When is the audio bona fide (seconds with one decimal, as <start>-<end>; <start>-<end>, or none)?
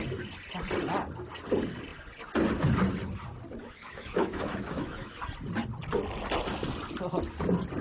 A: 0.0-3.6; 5.2-7.8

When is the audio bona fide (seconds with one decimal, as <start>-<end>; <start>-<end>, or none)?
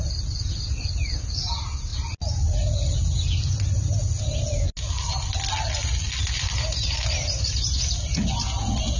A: 0.0-9.0